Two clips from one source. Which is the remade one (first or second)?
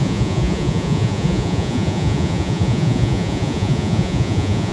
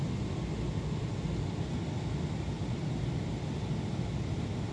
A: first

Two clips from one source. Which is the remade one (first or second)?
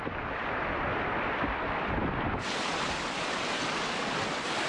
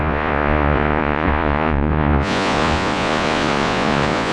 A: second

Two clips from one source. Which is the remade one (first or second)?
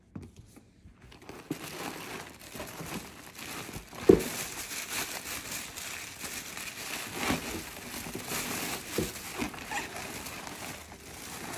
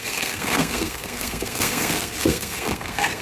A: second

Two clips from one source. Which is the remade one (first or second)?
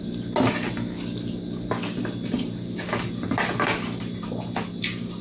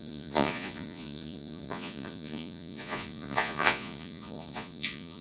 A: second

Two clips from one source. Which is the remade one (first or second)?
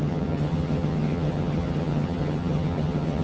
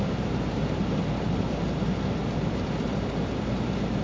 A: first